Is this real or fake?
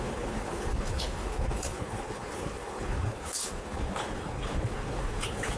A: fake